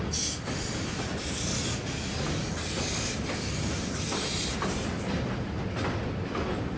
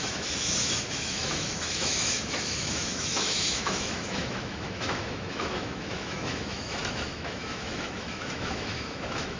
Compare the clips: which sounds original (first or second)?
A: first